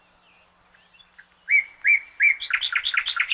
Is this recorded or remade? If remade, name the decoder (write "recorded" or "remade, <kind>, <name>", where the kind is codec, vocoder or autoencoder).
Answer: recorded